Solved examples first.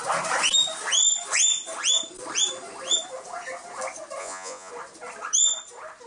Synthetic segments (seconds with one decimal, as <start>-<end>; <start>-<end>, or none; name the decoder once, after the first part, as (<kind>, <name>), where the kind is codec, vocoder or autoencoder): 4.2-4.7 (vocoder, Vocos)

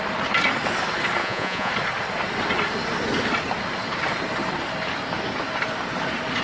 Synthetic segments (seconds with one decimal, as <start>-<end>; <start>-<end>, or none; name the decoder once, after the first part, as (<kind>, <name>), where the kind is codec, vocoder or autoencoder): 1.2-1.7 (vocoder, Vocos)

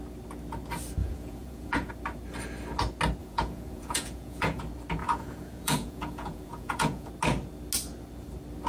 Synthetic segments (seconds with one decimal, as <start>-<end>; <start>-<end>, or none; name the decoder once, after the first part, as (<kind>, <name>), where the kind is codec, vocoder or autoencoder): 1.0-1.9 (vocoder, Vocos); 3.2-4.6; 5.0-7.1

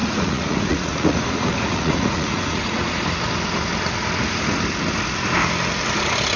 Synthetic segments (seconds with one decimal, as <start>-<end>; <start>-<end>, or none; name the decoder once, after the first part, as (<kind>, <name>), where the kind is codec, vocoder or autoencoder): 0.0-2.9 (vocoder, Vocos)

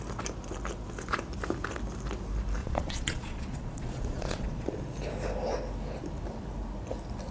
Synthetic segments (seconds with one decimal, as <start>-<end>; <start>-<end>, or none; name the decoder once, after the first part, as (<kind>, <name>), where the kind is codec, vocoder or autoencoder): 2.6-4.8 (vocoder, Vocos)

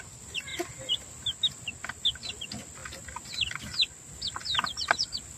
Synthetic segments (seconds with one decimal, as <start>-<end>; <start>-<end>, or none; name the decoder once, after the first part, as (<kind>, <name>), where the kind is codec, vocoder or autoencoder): none

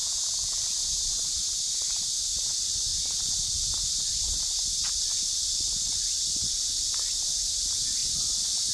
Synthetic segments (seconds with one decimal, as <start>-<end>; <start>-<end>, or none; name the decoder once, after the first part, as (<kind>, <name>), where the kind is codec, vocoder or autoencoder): 0.0-0.6 (vocoder, Vocos)

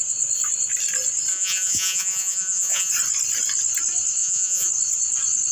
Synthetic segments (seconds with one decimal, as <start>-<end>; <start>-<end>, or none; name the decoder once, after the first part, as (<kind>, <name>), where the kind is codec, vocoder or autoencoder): 1.3-2.9 (vocoder, Vocos); 4.2-4.7